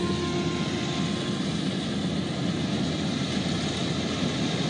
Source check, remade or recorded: recorded